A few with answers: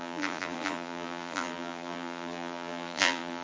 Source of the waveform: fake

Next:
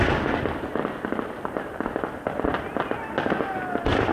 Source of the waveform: real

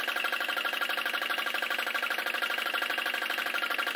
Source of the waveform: fake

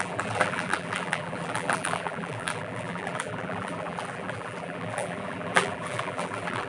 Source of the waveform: fake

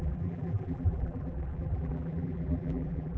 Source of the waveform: fake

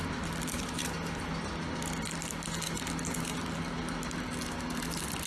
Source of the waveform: real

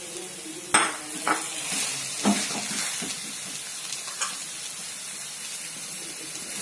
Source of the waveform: real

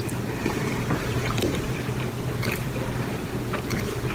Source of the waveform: real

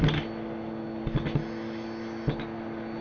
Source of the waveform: real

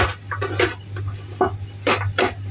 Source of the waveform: real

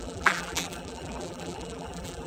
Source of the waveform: fake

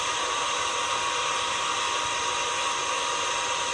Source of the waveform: real